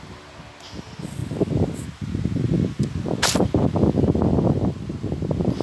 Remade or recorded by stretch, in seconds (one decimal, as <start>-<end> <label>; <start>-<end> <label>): 0.0-5.6 recorded